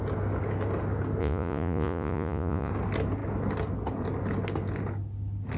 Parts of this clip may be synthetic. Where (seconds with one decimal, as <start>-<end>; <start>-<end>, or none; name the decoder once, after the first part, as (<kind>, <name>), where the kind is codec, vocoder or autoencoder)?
1.2-2.7 (vocoder, Vocos)